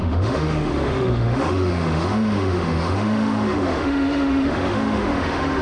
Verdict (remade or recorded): remade